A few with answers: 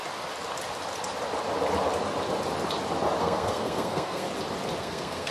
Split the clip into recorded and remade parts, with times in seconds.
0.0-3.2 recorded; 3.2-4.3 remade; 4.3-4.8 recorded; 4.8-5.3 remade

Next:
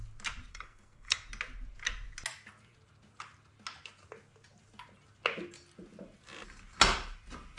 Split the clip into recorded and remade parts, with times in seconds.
0.0-0.5 recorded; 0.5-1.3 remade; 1.3-7.6 recorded

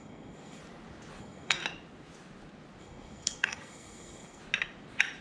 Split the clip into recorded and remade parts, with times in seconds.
0.0-0.6 remade; 0.6-1.2 recorded; 1.2-1.6 remade; 1.6-2.8 recorded; 2.8-4.4 remade; 4.4-5.2 recorded

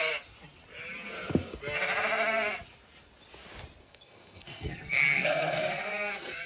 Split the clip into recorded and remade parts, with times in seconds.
0.0-3.8 recorded; 3.8-6.5 remade